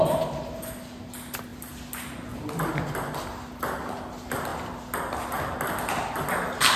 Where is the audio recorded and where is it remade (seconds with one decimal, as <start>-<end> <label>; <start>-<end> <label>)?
0.0-6.8 recorded